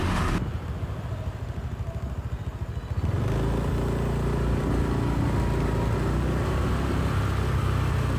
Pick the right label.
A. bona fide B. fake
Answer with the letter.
A